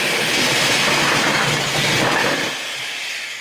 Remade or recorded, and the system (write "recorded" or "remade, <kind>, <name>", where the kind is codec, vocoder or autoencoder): recorded